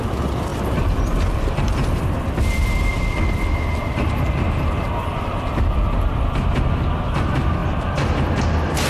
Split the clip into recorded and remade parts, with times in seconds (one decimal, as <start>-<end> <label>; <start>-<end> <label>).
0.0-8.9 recorded